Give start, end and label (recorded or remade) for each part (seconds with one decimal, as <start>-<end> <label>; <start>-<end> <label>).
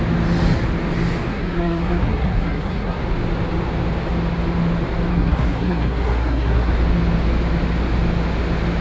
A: 0.0-1.3 recorded; 1.3-3.0 remade; 3.0-5.1 recorded; 5.1-6.7 remade; 6.7-8.8 recorded